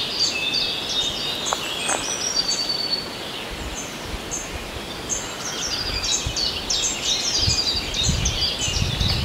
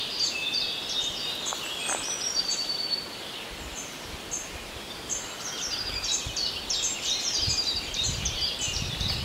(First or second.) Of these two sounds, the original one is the first